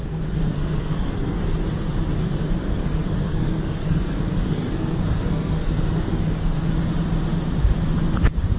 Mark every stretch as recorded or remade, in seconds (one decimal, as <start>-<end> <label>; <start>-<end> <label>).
0.0-1.4 remade; 1.4-2.2 recorded; 2.2-6.7 remade; 6.7-8.6 recorded